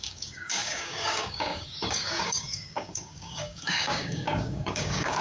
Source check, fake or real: fake